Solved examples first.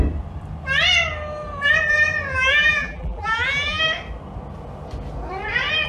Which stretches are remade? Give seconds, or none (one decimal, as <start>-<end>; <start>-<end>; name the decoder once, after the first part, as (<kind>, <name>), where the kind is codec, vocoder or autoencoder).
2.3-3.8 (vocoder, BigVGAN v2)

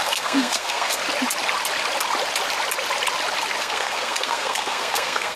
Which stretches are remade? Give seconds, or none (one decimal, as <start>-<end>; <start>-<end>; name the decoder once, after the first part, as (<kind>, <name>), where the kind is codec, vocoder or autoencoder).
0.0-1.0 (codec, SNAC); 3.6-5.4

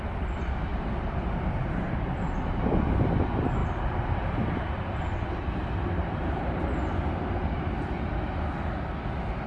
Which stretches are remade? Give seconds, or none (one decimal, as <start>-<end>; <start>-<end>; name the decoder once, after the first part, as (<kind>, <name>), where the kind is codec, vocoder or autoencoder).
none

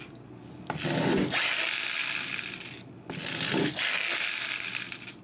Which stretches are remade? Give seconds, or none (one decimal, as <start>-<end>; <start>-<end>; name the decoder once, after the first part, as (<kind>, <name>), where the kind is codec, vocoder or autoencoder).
none

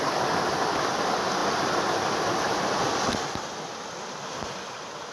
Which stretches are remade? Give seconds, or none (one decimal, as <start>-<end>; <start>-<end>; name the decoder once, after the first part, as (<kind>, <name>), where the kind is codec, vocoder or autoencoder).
none